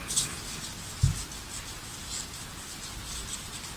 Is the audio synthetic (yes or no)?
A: no